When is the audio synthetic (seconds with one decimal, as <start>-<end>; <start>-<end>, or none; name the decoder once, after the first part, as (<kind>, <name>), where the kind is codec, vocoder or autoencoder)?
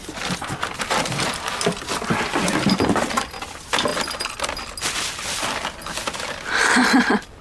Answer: none